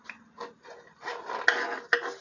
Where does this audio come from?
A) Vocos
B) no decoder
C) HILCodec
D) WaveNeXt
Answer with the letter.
B